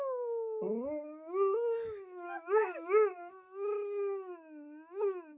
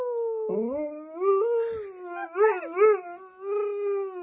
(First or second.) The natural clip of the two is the second